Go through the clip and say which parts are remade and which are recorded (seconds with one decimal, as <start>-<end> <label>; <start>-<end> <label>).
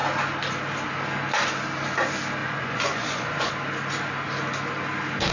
0.0-2.4 recorded; 2.4-3.5 remade; 3.5-5.3 recorded